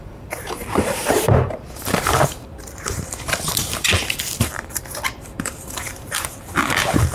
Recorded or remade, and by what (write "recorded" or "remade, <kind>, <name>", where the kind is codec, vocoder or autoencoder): remade, vocoder, BigVGAN v2